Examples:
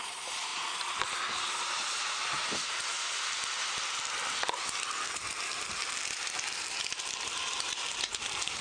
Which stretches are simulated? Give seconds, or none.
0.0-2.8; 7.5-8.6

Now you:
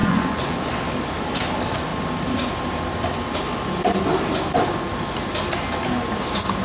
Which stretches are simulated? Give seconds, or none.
0.0-0.7

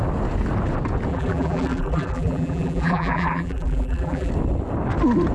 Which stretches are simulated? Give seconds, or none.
1.1-4.3

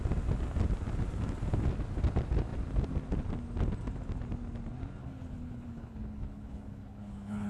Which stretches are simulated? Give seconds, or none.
5.0-7.5

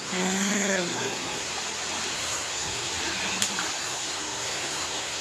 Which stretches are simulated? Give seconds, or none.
0.0-1.5; 2.1-2.9; 3.8-5.2

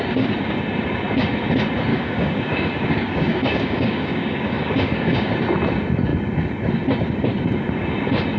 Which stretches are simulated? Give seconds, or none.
1.9-5.3